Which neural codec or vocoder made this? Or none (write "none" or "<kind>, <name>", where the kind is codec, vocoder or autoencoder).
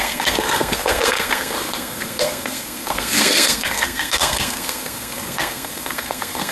codec, SNAC